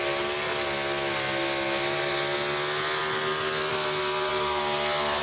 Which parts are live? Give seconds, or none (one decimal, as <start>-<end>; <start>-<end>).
0.0-5.2